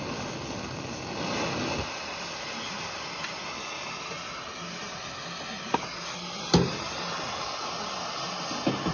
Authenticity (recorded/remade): recorded